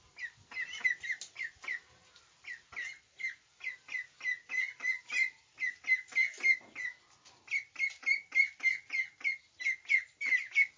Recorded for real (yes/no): yes